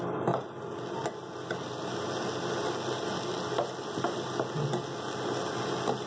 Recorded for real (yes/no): yes